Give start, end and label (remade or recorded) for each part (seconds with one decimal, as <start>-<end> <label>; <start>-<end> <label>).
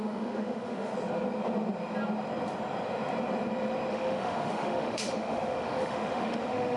0.0-0.9 remade; 0.9-3.9 recorded; 3.9-6.8 remade